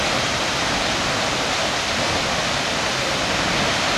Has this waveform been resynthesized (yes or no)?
no